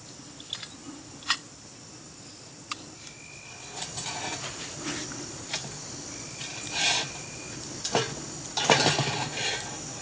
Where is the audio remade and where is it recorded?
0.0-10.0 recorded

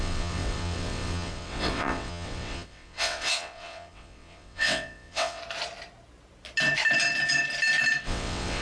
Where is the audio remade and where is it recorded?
0.0-5.4 remade; 5.4-8.0 recorded; 8.0-8.6 remade

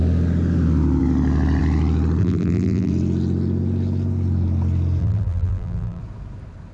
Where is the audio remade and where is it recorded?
0.0-2.2 recorded; 2.2-2.9 remade; 2.9-5.0 recorded; 5.0-6.0 remade; 6.0-6.7 recorded

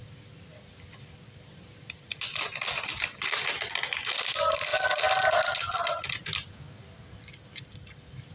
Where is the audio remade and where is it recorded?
0.0-8.3 recorded

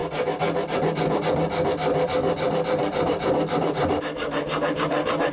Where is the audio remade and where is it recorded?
0.0-1.9 recorded; 1.9-5.3 remade

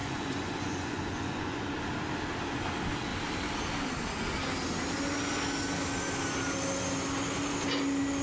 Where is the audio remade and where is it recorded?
0.0-1.6 remade; 1.6-8.2 recorded